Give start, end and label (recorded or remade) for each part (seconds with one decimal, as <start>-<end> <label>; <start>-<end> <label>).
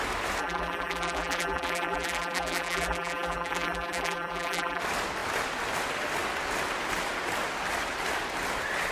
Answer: 0.0-0.4 recorded; 0.4-4.8 remade; 4.8-8.9 recorded